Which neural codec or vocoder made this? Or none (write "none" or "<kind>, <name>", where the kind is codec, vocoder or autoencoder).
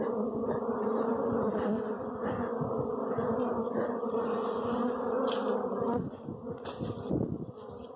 none